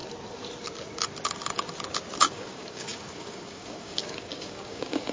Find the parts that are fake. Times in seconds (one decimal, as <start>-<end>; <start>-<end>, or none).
2.3-5.1